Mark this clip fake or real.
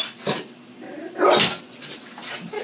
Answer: real